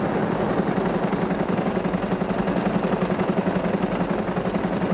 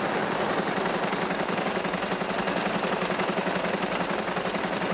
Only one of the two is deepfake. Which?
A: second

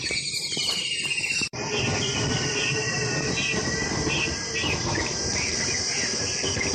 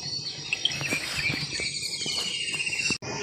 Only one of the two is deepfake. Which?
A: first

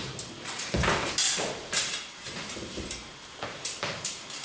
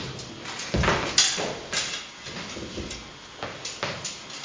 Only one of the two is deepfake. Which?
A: first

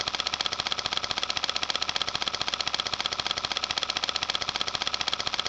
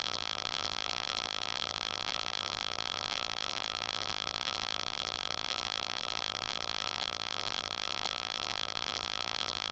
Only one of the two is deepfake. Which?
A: second